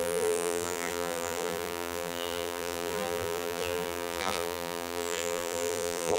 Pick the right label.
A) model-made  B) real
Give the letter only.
A